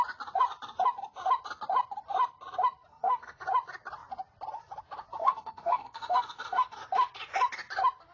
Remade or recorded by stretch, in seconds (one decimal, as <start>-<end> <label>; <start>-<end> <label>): 0.0-2.9 recorded; 2.9-3.4 remade; 3.4-5.2 recorded; 5.2-6.8 remade; 6.8-8.1 recorded